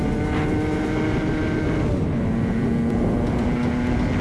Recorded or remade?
recorded